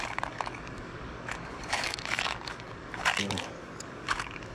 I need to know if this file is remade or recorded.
remade